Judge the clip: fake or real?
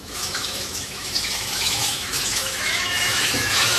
fake